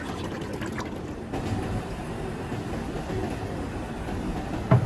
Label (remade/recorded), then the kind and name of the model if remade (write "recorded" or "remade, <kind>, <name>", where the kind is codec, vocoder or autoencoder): recorded